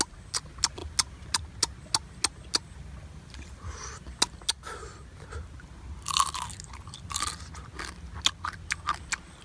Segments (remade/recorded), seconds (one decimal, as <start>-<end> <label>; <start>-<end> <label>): 0.0-9.4 recorded

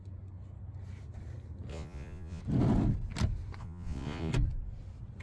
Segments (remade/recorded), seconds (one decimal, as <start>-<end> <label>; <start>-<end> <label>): 0.0-1.7 recorded; 1.7-2.4 remade; 2.4-3.6 recorded; 3.6-4.3 remade; 4.3-5.2 recorded

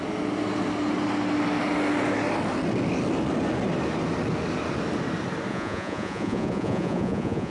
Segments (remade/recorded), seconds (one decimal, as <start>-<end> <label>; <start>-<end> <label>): 0.0-5.5 recorded; 5.5-7.5 remade

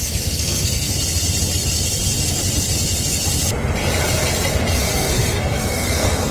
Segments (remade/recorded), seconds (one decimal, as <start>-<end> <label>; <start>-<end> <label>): 0.0-0.9 remade; 0.9-4.7 recorded; 4.7-6.3 remade

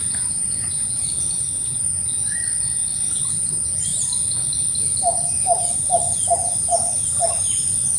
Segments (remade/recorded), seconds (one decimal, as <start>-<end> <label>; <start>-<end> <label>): 0.0-2.8 remade; 2.8-3.3 recorded; 3.3-3.9 remade; 3.9-6.0 recorded; 6.0-6.7 remade; 6.7-7.4 recorded; 7.4-8.0 remade

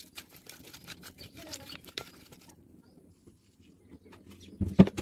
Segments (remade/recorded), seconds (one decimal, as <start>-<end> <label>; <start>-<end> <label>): 0.0-0.8 recorded; 0.8-3.8 remade; 3.8-5.0 recorded

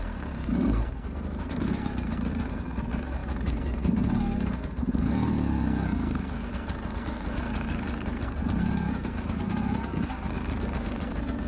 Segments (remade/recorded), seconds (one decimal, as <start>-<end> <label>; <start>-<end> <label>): 0.0-11.5 remade

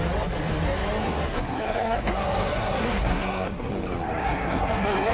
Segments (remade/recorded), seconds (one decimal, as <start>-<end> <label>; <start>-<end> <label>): 0.0-1.0 recorded; 1.0-3.7 remade; 3.7-4.2 recorded; 4.2-5.1 remade